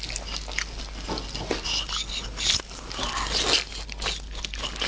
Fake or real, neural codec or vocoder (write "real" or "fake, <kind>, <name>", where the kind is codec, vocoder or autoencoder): real